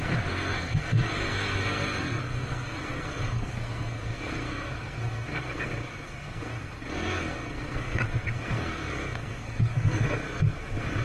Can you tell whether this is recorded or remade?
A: remade